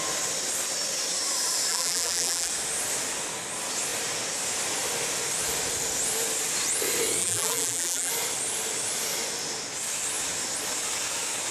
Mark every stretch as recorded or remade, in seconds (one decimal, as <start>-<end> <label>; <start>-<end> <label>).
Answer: 0.0-1.7 recorded; 1.7-2.5 remade; 2.5-7.2 recorded; 7.2-8.1 remade; 8.1-11.5 recorded